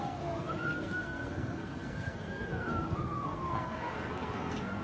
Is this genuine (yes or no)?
no